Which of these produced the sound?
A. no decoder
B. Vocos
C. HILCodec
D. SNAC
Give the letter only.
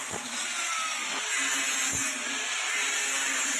A